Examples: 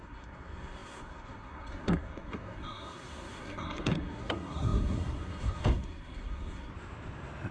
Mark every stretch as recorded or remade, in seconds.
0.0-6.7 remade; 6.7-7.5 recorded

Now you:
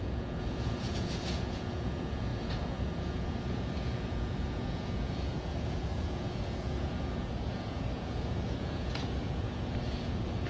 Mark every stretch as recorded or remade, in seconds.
0.0-10.5 remade

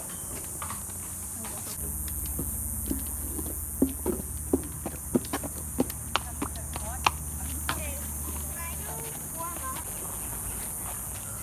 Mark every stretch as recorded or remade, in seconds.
0.0-11.4 recorded

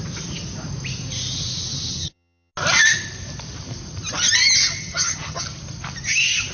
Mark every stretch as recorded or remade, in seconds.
0.0-1.9 recorded; 1.9-2.5 remade; 2.5-4.8 recorded; 4.8-5.4 remade; 5.4-6.5 recorded